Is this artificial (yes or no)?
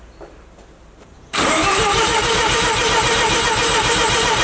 yes